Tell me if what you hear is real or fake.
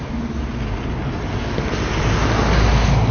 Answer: real